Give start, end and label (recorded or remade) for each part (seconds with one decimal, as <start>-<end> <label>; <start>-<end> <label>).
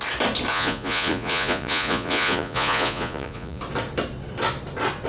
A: 0.0-0.5 recorded; 0.5-3.6 remade; 3.6-5.1 recorded